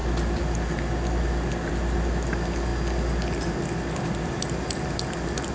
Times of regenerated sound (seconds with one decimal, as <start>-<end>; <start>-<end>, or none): none